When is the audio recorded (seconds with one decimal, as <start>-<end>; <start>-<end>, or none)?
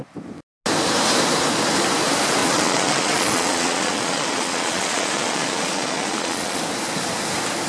0.0-2.4; 6.6-7.7